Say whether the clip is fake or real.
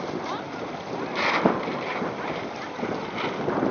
fake